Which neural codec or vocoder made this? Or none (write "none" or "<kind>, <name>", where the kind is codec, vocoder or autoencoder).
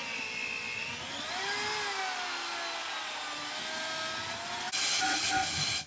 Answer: none